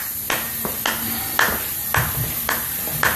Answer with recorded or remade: recorded